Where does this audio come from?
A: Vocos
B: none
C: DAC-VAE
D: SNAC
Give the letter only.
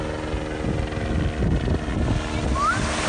B